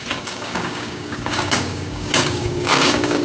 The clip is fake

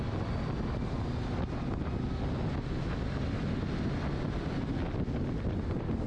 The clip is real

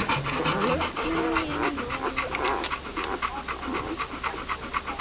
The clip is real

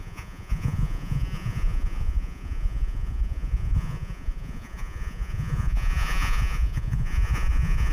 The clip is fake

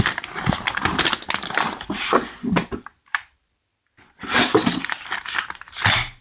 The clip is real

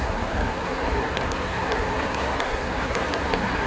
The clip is fake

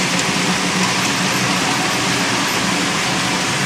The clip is real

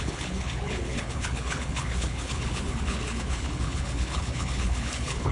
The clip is fake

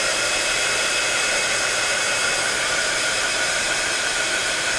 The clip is fake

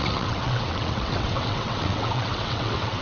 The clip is fake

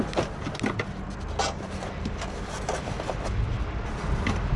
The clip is real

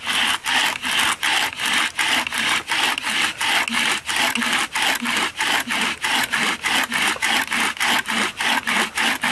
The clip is real